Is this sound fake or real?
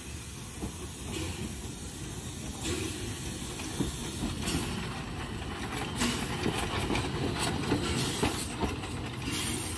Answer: real